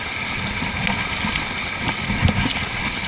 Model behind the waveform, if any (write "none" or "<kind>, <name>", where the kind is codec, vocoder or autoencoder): none